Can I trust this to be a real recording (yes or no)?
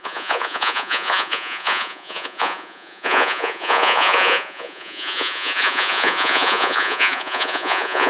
no